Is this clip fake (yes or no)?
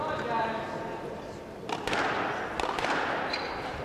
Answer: no